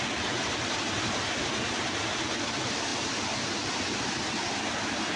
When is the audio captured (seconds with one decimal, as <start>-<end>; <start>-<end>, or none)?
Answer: 0.0-5.2